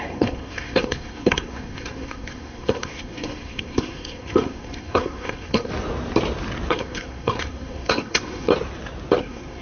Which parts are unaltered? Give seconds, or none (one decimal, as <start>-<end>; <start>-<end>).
5.7-6.7; 8.5-9.2